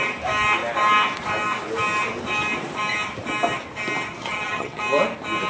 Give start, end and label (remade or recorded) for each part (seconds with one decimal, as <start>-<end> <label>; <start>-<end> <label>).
0.0-4.2 recorded; 4.2-4.8 remade; 4.8-5.5 recorded